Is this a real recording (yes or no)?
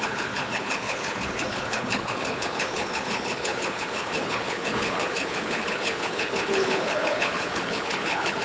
no